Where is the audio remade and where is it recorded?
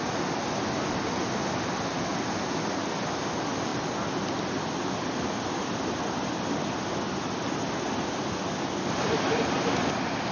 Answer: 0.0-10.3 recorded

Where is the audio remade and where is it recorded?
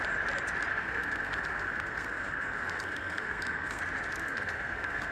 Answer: 0.0-0.7 recorded; 0.7-3.8 remade; 3.8-4.2 recorded; 4.2-5.1 remade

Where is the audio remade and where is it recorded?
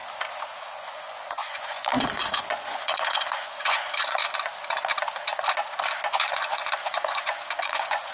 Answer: 0.0-0.6 recorded; 0.6-4.2 remade; 4.2-6.1 recorded; 6.1-8.1 remade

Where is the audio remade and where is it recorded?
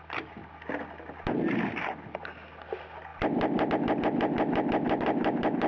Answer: 0.0-5.7 recorded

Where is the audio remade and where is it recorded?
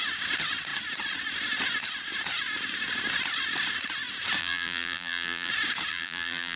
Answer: 0.0-4.4 recorded; 4.4-5.5 remade; 5.5-5.9 recorded; 5.9-6.6 remade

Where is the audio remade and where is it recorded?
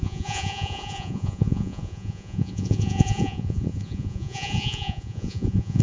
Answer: 0.0-5.8 remade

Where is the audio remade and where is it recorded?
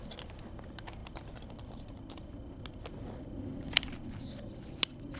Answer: 0.0-5.2 recorded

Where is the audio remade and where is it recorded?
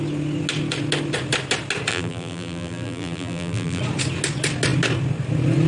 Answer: 0.0-1.9 recorded; 1.9-3.8 remade; 3.8-5.7 recorded